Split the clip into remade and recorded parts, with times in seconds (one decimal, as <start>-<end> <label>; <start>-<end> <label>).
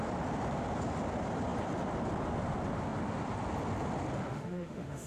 0.0-4.3 recorded; 4.3-5.1 remade